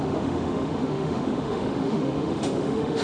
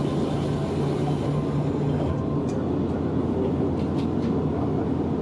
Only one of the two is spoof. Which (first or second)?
first